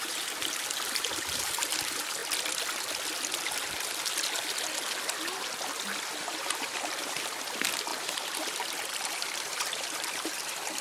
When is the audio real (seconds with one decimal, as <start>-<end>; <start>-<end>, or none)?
2.2-6.2